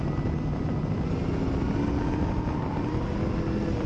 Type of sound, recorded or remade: recorded